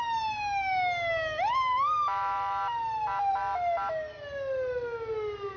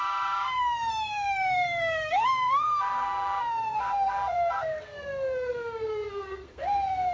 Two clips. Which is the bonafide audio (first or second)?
first